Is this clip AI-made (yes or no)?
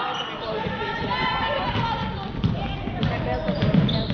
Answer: no